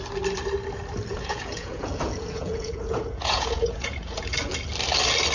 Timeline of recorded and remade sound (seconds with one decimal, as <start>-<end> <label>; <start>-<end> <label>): 0.0-1.1 recorded; 1.1-4.2 remade; 4.2-5.3 recorded